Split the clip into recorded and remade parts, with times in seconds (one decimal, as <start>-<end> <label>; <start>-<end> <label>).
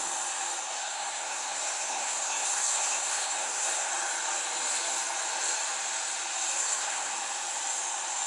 0.0-0.8 recorded; 0.8-3.9 remade; 3.9-6.6 recorded; 6.6-7.1 remade; 7.1-8.3 recorded